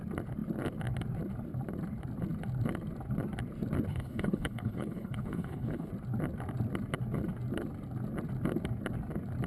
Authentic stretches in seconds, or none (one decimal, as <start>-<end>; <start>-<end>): 0.0-3.9; 5.9-9.5